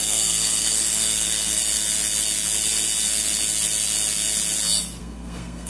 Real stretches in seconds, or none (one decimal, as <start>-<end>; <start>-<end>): 1.6-5.0